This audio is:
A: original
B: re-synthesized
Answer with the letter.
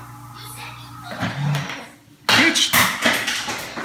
A